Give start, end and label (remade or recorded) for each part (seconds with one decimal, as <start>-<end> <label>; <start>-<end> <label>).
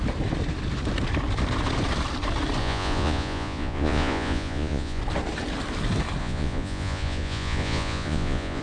0.0-2.6 recorded; 2.6-5.0 remade; 5.0-6.2 recorded; 6.2-8.6 remade